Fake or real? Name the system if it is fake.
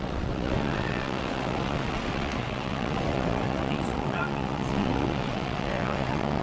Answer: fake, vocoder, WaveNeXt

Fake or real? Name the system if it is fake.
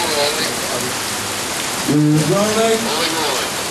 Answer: real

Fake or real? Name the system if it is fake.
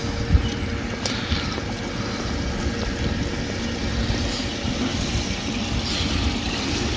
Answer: real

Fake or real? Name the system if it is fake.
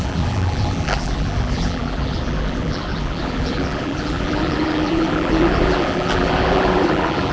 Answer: fake, vocoder, BigVGAN v2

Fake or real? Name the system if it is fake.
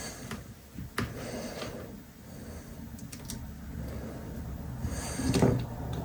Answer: real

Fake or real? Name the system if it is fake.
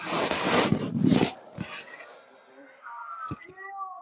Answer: real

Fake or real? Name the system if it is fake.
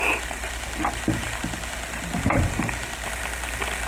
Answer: real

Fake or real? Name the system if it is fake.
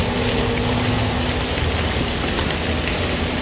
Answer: real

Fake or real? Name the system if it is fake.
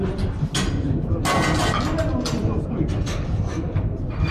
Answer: real